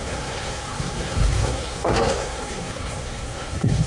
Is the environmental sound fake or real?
fake